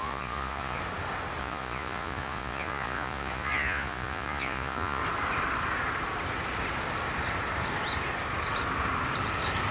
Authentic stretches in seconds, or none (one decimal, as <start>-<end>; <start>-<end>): 0.8-1.4; 5.0-9.7